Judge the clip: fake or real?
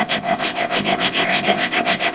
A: fake